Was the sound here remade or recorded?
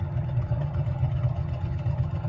remade